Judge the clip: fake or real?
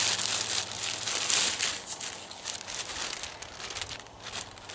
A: real